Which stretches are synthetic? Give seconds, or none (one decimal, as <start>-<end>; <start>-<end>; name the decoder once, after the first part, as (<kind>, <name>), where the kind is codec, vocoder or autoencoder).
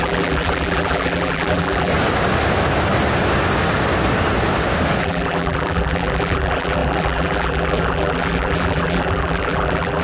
0.0-1.9 (vocoder, BigVGAN v2); 5.0-10.0